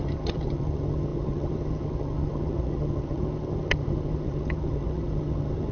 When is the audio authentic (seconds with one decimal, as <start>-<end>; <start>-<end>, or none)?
none